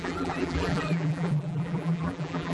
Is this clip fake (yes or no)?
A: yes